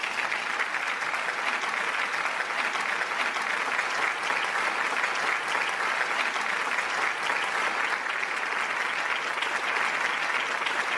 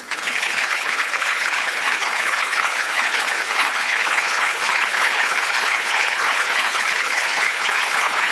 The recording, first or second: first